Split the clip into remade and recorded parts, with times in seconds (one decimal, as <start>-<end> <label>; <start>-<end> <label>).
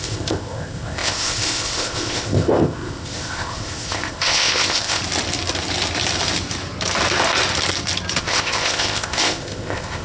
0.0-5.0 remade; 5.0-8.2 recorded; 8.2-10.0 remade